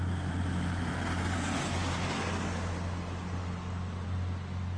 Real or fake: real